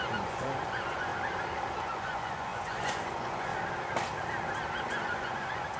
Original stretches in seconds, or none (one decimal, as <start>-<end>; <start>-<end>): 1.1-1.8; 3.5-4.8